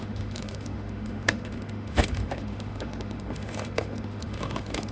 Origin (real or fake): fake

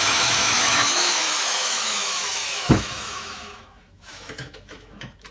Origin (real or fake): fake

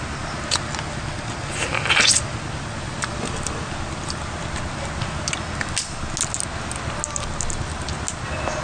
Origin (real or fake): real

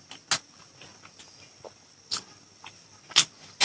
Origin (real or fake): real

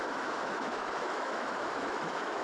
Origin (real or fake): fake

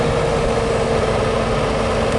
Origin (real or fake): real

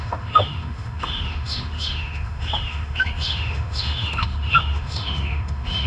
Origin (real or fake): fake